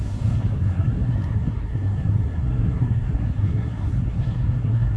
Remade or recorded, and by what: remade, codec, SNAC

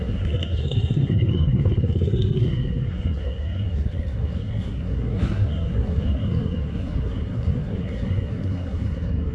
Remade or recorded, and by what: remade, codec, SNAC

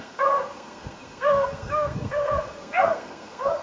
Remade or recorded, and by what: remade, codec, SNAC